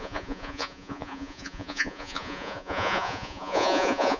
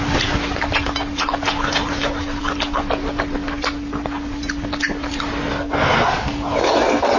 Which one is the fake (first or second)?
first